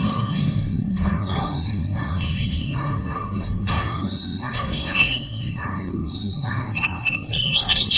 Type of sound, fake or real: fake